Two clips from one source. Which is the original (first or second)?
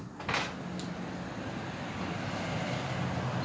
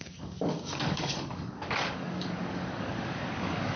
first